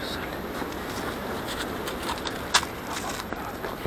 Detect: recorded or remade recorded